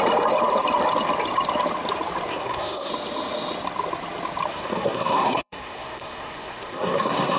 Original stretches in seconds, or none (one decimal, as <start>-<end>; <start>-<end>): 0.0-2.3; 2.9-4.5